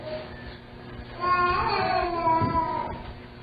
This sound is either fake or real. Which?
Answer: real